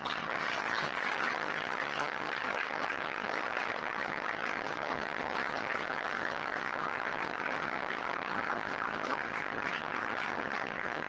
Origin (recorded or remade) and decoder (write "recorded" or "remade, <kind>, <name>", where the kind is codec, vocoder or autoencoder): remade, vocoder, HiFi-GAN